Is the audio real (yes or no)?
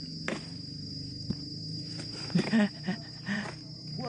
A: yes